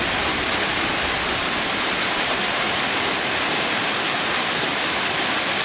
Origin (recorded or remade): recorded